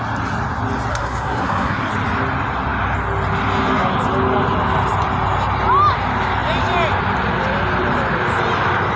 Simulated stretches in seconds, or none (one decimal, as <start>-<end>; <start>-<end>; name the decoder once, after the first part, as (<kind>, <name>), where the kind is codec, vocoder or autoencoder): 0.9-1.9 (codec, SNAC)